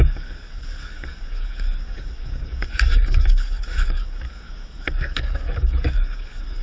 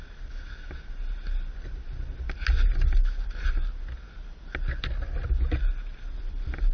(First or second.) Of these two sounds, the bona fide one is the second